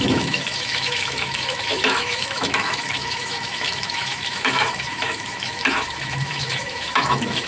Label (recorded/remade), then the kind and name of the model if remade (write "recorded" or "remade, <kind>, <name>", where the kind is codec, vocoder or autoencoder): remade, autoencoder, DAC-VAE